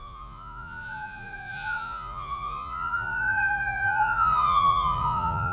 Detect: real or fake fake